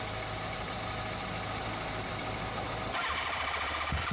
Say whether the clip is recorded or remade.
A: recorded